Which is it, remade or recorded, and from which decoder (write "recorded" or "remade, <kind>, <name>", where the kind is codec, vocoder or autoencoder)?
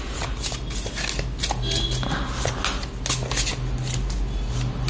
recorded